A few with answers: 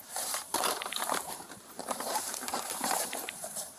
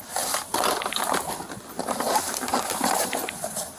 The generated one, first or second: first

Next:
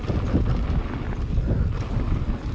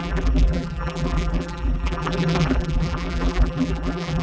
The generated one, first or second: second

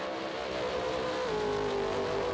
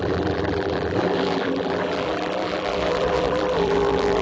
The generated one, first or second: second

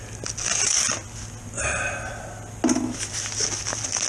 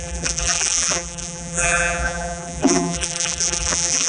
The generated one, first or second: second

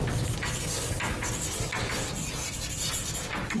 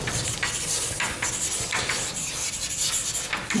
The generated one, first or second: second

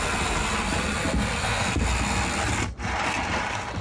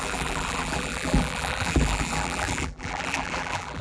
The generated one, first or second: second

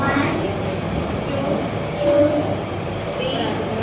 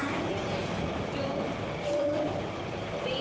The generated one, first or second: second